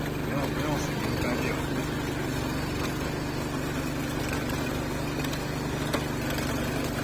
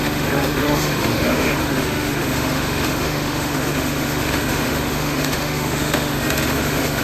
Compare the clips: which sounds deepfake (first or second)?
second